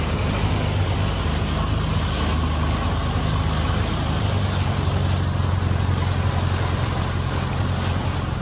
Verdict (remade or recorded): recorded